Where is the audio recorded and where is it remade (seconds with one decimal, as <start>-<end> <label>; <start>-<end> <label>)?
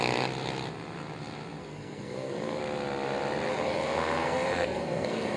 0.0-1.6 recorded; 1.6-2.6 remade; 2.6-3.5 recorded; 3.5-5.4 remade